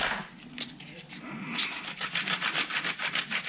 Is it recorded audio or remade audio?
recorded